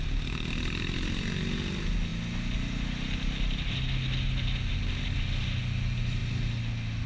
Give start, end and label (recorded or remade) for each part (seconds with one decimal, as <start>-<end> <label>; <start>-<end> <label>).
0.0-7.1 recorded